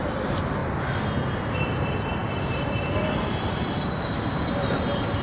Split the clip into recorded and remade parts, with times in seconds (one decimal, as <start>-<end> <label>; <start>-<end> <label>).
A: 0.0-0.6 remade; 0.6-1.1 recorded; 1.1-5.2 remade